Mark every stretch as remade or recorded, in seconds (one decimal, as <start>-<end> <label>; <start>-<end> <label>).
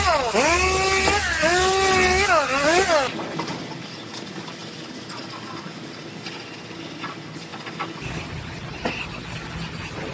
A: 0.0-10.1 recorded